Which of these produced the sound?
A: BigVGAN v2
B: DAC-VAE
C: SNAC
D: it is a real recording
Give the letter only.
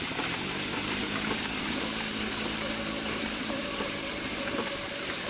A